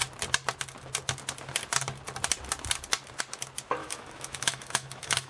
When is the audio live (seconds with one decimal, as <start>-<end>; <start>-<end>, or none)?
0.0-3.8